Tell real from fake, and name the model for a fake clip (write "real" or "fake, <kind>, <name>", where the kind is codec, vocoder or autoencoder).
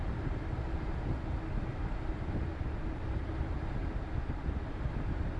real